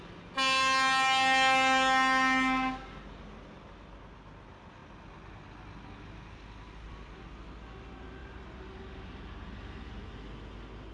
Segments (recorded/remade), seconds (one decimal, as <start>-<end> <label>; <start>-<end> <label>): 0.0-10.9 recorded